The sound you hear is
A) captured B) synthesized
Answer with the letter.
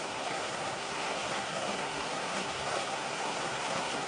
B